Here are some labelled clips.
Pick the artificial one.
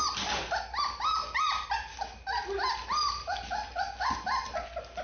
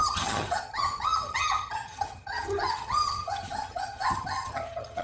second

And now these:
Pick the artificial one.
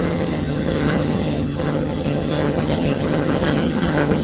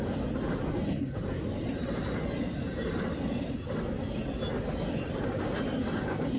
first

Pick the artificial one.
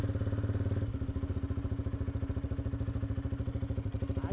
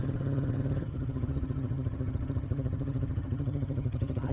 second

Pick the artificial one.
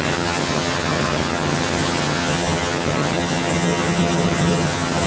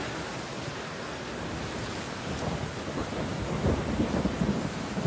first